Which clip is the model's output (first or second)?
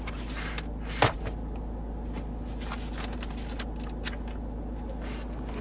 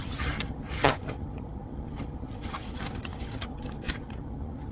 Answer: second